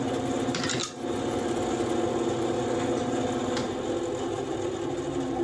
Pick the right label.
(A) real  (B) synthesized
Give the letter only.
A